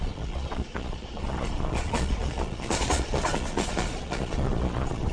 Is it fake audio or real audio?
fake